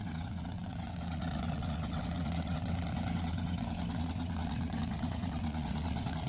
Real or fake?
fake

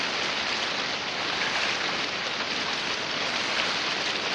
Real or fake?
real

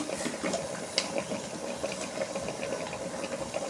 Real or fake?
real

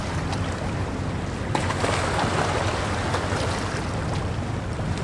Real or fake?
real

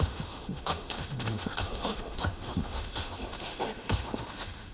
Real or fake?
fake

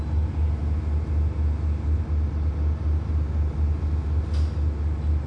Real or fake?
real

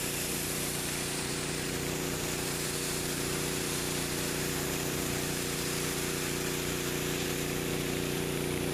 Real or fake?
fake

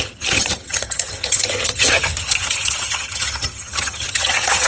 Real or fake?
fake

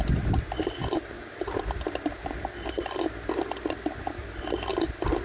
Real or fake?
real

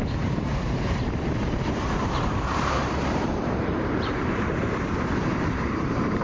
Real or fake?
fake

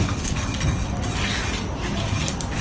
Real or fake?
real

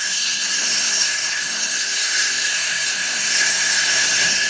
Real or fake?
fake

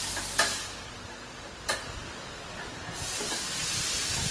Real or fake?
real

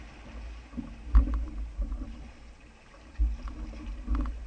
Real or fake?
real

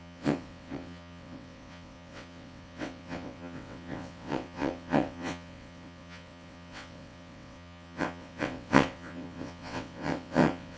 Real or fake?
fake